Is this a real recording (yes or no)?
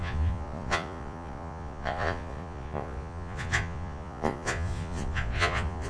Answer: no